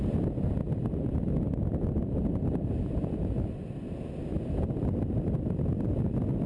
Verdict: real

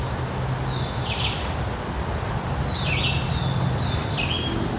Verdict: real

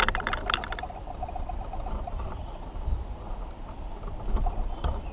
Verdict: fake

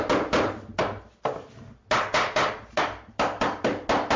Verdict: real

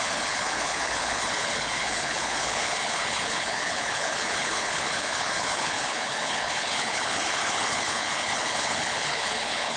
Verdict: fake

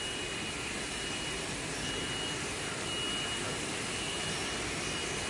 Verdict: real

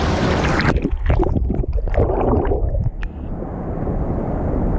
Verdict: real